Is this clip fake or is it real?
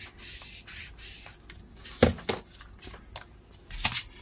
real